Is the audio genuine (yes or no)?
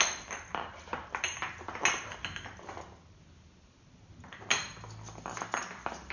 yes